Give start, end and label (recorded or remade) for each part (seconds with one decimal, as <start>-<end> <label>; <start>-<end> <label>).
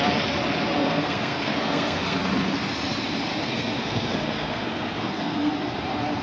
0.0-0.8 recorded; 0.8-2.2 remade; 2.2-3.4 recorded; 3.4-5.5 remade; 5.5-6.2 recorded